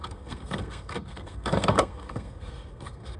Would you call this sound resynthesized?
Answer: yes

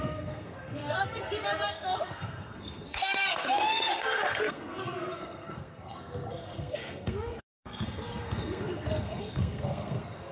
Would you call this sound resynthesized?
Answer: yes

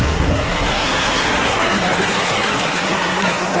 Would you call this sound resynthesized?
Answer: yes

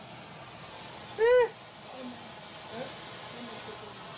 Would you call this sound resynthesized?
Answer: no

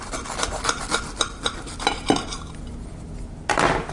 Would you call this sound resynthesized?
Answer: no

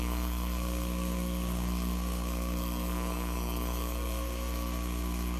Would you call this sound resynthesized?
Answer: yes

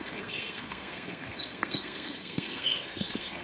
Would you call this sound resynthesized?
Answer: yes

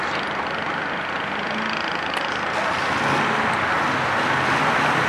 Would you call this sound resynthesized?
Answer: no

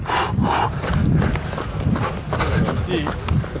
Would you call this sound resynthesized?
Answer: no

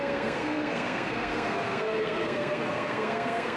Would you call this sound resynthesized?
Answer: yes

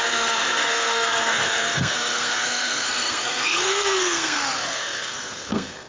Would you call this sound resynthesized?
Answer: yes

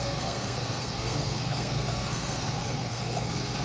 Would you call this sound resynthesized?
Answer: yes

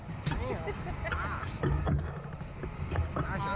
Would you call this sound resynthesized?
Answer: no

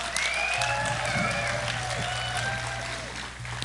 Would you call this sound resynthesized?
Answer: no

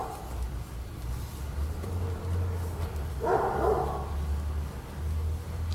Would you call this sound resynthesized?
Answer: no